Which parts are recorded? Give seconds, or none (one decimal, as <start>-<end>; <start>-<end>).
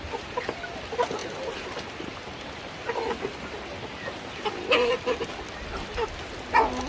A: 0.0-6.9